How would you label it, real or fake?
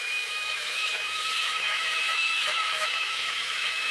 fake